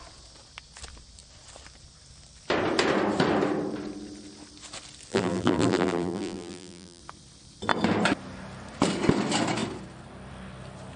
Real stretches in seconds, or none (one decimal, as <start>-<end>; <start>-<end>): 0.0-5.1; 7.0-11.0